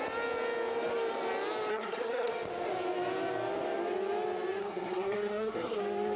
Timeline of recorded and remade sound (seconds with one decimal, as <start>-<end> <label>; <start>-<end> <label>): 0.0-1.7 recorded; 1.7-2.3 remade; 2.3-4.6 recorded; 4.6-5.8 remade; 5.8-6.2 recorded